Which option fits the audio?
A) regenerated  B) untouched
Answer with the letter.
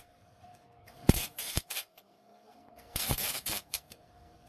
A